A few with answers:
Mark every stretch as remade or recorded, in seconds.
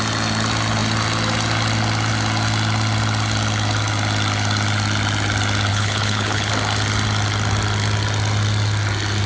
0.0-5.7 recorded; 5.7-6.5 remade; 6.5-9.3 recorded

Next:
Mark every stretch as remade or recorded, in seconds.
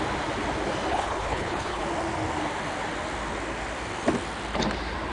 0.0-0.9 recorded; 0.9-1.8 remade; 1.8-5.1 recorded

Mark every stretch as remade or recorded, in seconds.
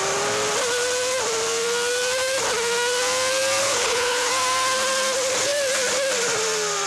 0.0-3.6 recorded; 3.6-4.3 remade; 4.3-6.9 recorded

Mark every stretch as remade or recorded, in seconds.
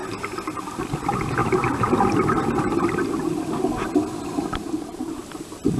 0.0-5.8 recorded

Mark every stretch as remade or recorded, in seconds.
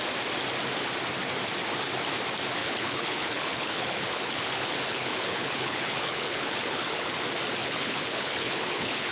0.0-2.6 recorded; 2.6-7.1 remade; 7.1-7.6 recorded; 7.6-9.1 remade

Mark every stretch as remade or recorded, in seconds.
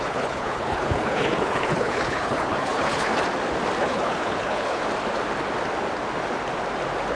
0.0-3.1 remade; 3.1-3.8 recorded; 3.8-4.8 remade; 4.8-7.1 recorded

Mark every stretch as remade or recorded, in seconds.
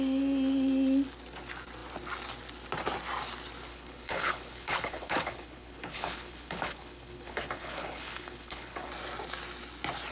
0.0-3.7 recorded; 3.7-8.9 remade; 8.9-10.1 recorded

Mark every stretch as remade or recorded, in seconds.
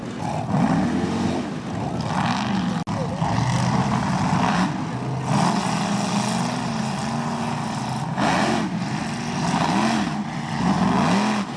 0.0-11.6 recorded